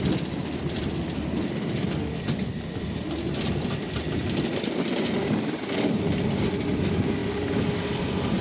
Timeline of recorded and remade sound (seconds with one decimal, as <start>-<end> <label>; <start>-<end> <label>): 0.0-8.4 recorded